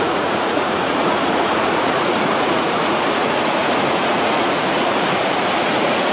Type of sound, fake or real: fake